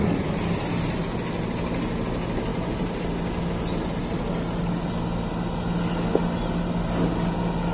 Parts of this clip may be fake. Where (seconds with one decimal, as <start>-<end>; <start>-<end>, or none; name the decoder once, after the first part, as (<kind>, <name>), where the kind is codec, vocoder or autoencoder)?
none